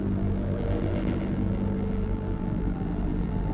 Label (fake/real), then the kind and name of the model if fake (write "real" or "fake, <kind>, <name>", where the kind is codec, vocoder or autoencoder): fake, vocoder, BigVGAN v2